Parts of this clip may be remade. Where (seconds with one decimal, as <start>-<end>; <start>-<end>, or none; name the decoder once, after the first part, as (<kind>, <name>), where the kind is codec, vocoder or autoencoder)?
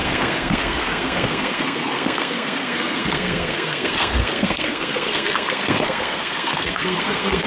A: 0.0-7.5 (codec, SNAC)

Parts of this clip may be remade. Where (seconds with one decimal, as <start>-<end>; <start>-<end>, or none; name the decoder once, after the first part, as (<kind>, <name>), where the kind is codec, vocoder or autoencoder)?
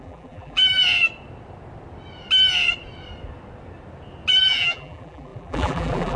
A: 0.0-0.8 (vocoder, BigVGAN v2); 4.4-6.2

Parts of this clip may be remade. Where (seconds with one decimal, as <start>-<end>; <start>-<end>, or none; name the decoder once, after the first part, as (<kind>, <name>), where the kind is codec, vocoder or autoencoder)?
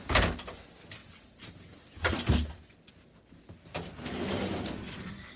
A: none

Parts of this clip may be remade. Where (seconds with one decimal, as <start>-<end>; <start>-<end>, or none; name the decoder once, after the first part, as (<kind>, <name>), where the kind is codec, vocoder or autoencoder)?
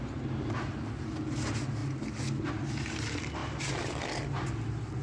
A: none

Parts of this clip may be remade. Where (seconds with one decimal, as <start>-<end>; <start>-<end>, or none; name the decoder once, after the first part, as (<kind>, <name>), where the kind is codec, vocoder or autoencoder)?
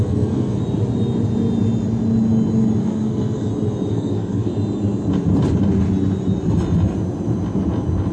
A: 0.0-0.6 (codec, SNAC); 2.8-3.5; 3.9-4.5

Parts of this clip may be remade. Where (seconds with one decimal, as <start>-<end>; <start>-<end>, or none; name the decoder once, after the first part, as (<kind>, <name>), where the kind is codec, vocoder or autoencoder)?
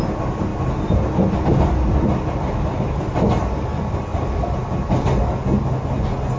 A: none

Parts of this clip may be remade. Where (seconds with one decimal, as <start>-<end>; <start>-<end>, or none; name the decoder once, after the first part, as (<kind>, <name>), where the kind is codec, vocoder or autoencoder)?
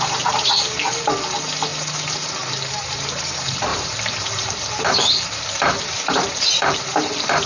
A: 3.7-7.5 (vocoder, BigVGAN v2)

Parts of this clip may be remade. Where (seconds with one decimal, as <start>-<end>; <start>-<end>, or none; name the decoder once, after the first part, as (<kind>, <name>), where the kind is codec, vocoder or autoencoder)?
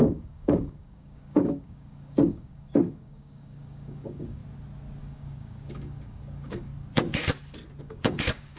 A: 0.0-4.4 (codec, DAC); 5.0-6.7; 7.8-8.6